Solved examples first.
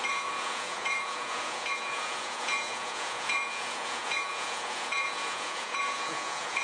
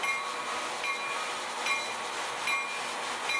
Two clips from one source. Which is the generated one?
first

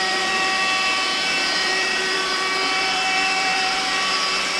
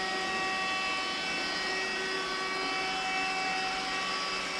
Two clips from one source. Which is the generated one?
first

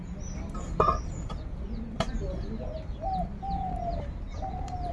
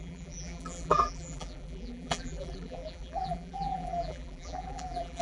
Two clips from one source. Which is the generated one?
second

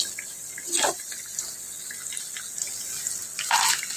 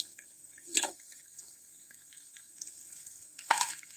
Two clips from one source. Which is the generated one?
second